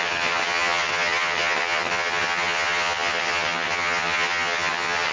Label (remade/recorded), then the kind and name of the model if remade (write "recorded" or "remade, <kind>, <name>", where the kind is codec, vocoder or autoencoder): remade, vocoder, HiFi-GAN